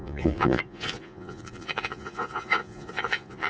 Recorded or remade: remade